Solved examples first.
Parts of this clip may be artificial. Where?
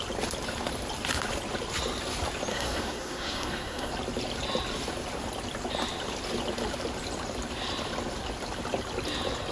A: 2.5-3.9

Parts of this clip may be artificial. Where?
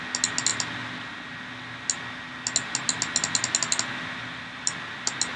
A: none